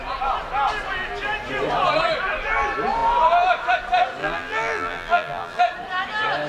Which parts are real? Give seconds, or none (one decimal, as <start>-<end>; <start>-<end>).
0.0-4.2; 5.6-6.5